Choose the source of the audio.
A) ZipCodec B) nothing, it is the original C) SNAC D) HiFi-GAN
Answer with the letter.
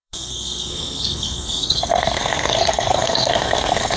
C